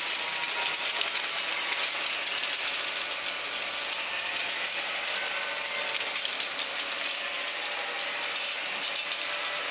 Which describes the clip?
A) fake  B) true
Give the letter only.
B